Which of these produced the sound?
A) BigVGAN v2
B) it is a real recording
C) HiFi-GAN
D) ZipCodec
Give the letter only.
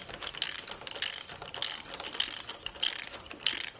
A